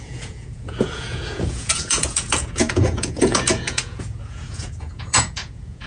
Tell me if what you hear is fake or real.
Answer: fake